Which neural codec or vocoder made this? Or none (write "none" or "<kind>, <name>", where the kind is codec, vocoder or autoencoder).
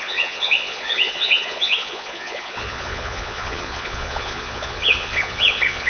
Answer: vocoder, Vocos